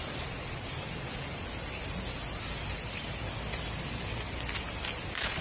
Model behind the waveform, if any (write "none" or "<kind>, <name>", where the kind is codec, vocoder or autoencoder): none